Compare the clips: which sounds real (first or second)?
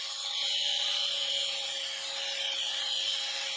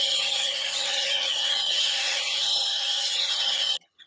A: first